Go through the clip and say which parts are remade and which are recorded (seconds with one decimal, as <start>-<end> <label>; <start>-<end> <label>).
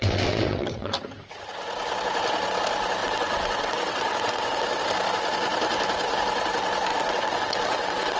0.0-0.9 remade; 0.9-3.0 recorded; 3.0-4.8 remade; 4.8-6.9 recorded; 6.9-8.2 remade